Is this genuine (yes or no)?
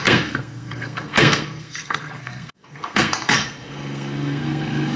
no